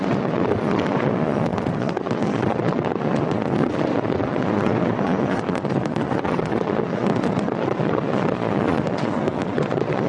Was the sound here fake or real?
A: fake